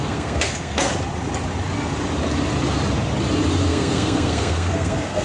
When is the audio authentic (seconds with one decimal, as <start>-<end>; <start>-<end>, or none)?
0.9-3.7